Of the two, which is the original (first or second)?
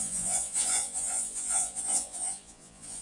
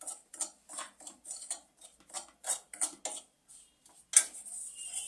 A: second